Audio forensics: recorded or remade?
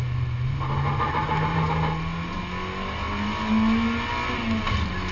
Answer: recorded